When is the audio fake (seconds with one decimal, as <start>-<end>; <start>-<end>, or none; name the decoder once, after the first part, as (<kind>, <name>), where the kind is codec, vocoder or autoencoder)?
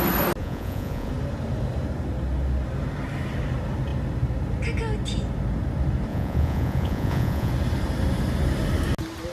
0.4-1.1 (vocoder, Vocos); 6.1-7.5